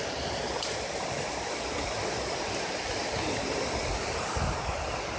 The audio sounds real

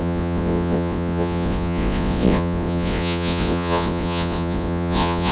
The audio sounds fake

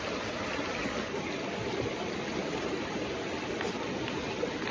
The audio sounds real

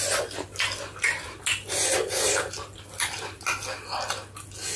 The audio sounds real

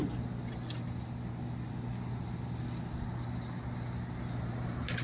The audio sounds real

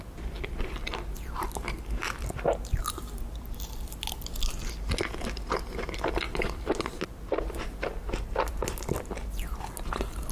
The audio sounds real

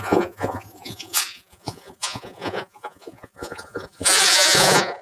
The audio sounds fake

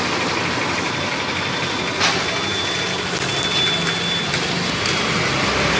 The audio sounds real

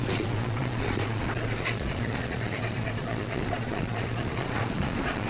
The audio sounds fake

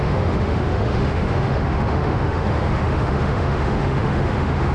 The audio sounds fake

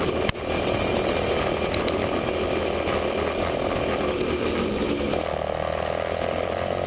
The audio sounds real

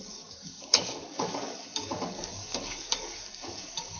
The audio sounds fake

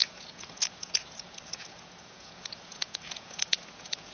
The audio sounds fake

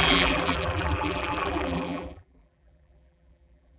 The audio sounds fake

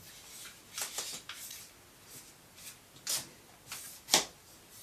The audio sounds real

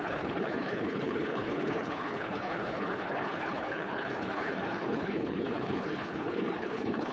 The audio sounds fake